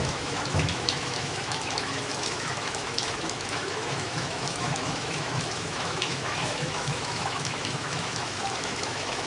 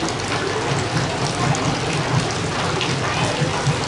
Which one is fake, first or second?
first